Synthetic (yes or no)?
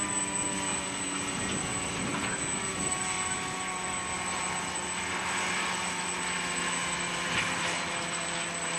no